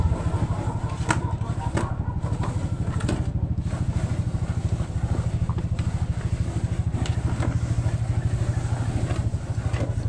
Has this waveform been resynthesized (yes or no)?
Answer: no